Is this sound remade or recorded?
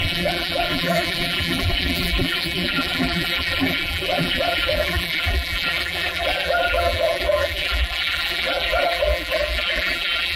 remade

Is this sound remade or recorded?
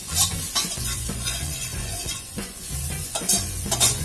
remade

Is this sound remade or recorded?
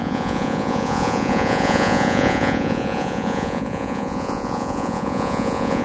remade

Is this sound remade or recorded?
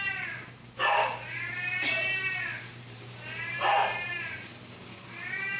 remade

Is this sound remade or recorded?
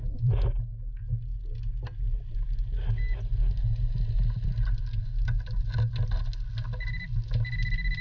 recorded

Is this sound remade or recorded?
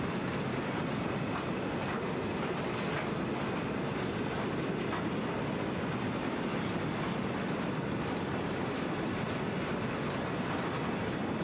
recorded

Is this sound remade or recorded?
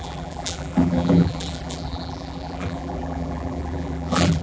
remade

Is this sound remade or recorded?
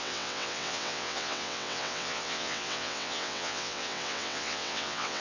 remade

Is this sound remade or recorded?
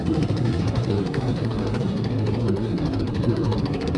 remade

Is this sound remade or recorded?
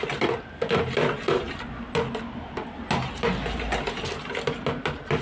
recorded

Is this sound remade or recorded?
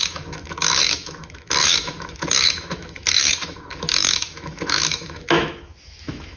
remade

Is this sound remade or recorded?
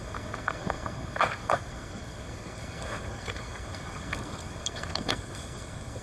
remade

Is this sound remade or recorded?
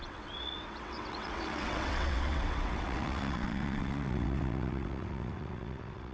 remade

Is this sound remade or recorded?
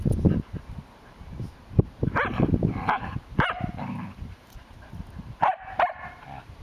remade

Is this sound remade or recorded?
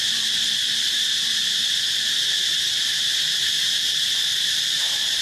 remade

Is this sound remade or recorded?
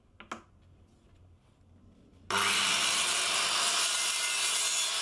recorded